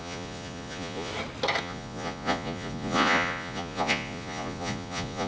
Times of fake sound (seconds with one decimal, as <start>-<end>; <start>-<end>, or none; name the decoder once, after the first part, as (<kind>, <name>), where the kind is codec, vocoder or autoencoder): 0.0-1.1 (vocoder, Vocos); 1.6-5.3